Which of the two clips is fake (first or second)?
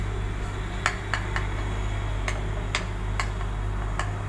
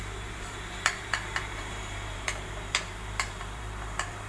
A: second